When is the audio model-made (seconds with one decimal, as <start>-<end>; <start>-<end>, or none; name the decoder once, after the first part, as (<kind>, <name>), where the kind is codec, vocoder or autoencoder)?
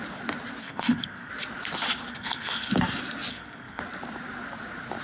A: 0.6-1.3 (codec, SNAC); 2.1-2.7; 3.3-3.8